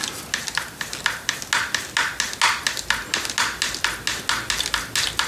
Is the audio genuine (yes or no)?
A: yes